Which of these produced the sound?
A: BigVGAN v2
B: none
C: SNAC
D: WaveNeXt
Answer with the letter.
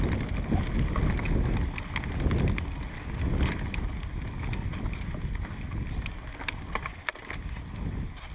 B